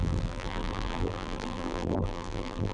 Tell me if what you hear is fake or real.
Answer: fake